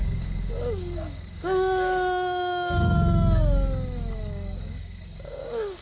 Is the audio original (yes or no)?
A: no